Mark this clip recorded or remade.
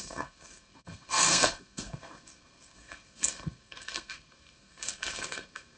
remade